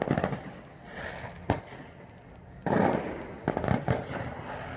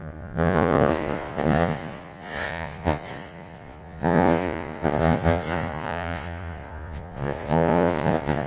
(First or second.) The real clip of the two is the first